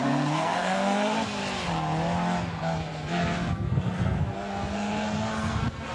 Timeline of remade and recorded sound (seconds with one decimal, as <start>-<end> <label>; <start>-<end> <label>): 0.0-1.4 remade; 1.4-2.6 recorded; 2.6-5.9 remade